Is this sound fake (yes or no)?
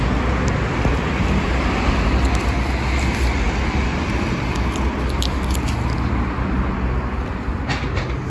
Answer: no